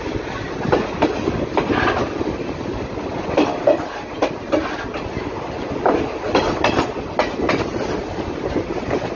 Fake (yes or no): no